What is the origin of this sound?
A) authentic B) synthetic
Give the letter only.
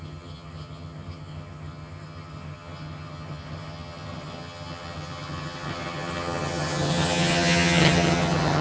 B